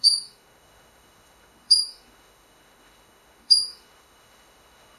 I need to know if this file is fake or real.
fake